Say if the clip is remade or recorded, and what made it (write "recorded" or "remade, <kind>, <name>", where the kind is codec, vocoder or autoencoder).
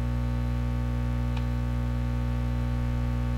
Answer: recorded